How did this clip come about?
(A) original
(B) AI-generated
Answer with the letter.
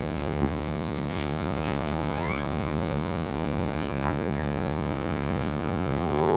B